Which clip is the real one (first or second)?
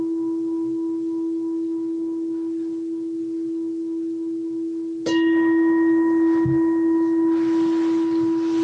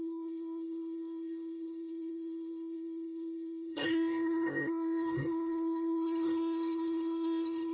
first